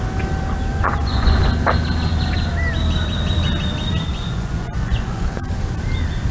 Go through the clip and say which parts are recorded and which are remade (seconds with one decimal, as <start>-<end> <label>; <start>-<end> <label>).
0.0-0.7 recorded; 0.7-1.4 remade; 1.4-4.1 recorded; 4.1-5.5 remade; 5.5-6.3 recorded